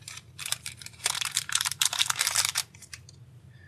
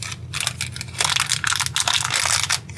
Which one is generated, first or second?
first